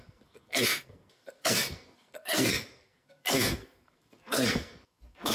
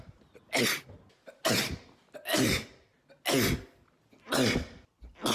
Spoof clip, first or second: first